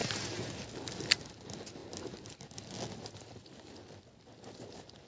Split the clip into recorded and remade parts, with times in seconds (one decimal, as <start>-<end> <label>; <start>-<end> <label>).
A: 0.0-5.1 recorded